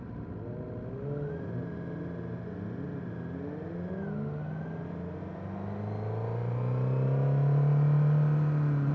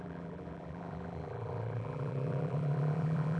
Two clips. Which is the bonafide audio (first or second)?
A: first